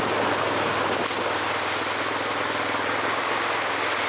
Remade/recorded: recorded